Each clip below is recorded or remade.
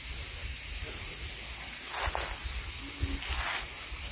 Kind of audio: recorded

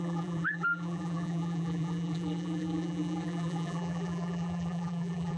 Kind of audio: remade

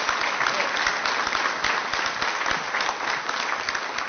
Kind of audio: recorded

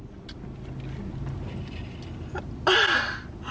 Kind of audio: recorded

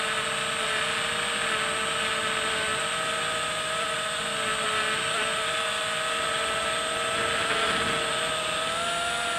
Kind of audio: recorded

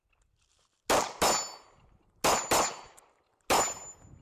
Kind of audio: recorded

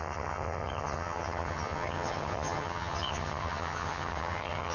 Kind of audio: remade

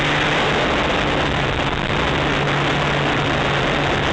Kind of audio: recorded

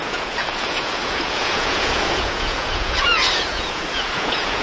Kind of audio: remade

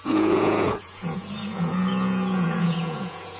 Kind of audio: remade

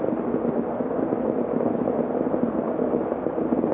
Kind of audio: recorded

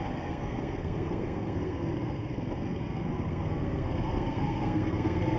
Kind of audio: remade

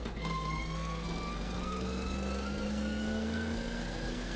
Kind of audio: remade